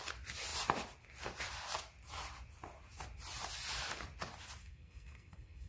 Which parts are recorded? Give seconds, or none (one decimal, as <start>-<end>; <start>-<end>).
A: 0.0-4.6